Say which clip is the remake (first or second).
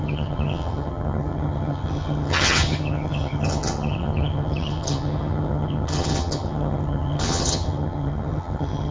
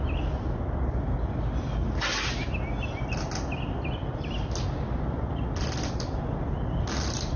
first